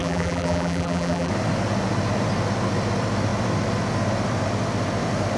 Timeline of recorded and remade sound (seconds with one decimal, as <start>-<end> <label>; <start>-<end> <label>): 0.0-1.3 remade; 1.3-5.4 recorded